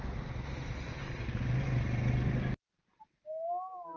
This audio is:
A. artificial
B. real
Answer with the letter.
B